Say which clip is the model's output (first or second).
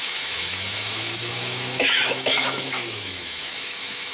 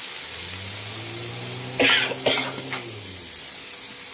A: first